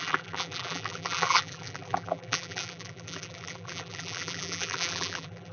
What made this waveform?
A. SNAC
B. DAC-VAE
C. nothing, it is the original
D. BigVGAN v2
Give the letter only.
D